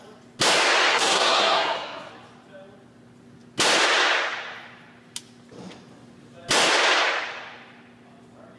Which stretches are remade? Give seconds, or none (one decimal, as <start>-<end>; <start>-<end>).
0.9-2.1